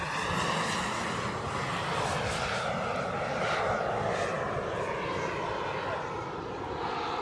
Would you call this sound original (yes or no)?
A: yes